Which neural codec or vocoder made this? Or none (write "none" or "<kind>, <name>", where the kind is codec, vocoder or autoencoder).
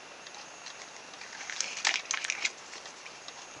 none